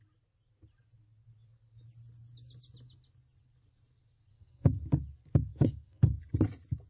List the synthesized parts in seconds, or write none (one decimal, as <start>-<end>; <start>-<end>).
4.3-4.8; 5.5-6.2